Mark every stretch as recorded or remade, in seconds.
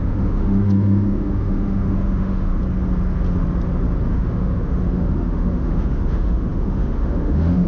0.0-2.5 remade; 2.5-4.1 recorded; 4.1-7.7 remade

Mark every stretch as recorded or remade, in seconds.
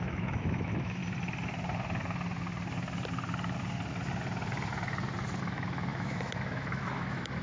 0.0-1.0 remade; 1.0-5.4 recorded; 5.4-7.4 remade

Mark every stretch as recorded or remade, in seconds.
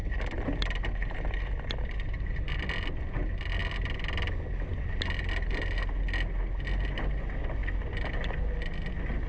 0.0-9.3 recorded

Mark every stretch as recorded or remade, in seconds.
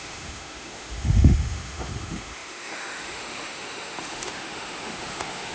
0.0-5.5 remade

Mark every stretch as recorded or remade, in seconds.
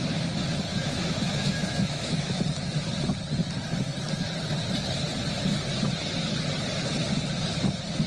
0.0-0.7 recorded; 0.7-2.4 remade; 2.4-8.1 recorded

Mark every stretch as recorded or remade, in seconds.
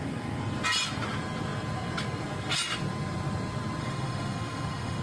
0.0-3.8 recorded; 3.8-5.0 remade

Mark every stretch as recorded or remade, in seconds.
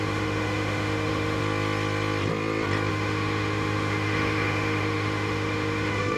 0.0-1.4 remade; 1.4-2.9 recorded; 2.9-6.2 remade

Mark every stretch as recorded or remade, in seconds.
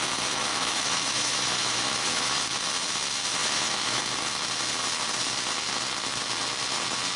0.0-0.5 recorded; 0.5-2.4 remade; 2.4-3.4 recorded; 3.4-4.0 remade; 4.0-7.2 recorded